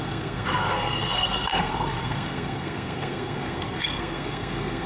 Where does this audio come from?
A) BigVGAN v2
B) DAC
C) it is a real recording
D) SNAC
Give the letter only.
D